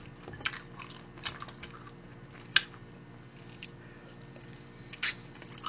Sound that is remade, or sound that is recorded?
recorded